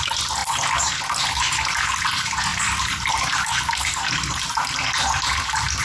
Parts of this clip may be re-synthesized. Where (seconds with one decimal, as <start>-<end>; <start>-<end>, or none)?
2.5-4.6